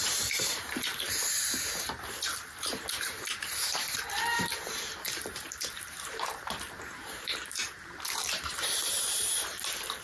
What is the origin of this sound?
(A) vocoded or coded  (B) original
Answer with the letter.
A